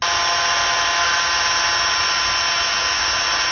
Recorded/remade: recorded